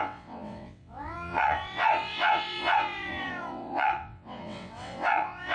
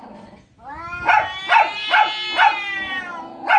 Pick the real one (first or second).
second